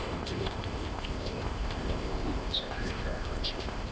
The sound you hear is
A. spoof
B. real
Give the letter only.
A